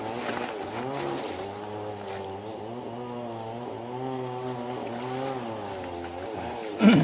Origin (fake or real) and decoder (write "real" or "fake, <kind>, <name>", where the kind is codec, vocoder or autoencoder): real